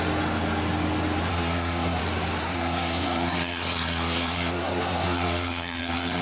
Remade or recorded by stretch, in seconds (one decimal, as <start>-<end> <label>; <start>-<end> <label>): 0.0-1.3 recorded; 1.3-2.0 remade; 2.0-2.4 recorded; 2.4-6.2 remade